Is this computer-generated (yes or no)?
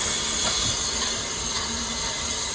no